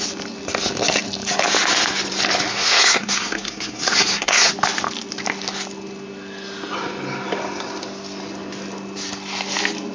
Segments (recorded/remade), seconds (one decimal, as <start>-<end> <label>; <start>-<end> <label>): 0.0-2.5 recorded; 2.5-4.5 remade; 4.5-9.9 recorded